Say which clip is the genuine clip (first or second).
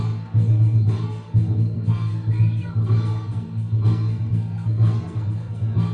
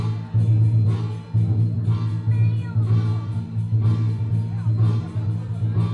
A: second